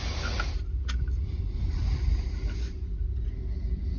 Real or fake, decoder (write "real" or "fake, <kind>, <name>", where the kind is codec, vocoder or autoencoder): real